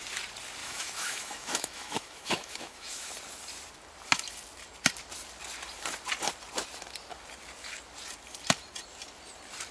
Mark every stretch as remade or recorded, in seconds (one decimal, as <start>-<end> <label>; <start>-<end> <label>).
0.0-0.6 recorded; 0.6-3.1 remade; 3.1-9.7 recorded